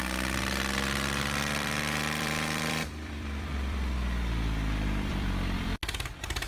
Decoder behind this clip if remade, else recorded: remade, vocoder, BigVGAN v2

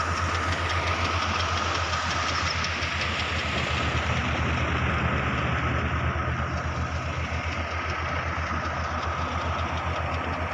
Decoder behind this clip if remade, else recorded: recorded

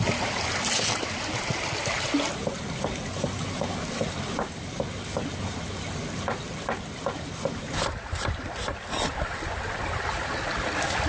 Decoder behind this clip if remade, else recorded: recorded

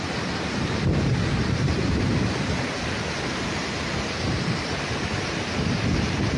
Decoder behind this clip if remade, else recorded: remade, vocoder, BigVGAN v2